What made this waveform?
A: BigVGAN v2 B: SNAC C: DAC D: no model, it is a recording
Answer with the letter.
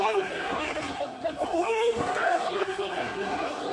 B